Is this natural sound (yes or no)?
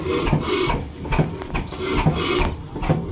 yes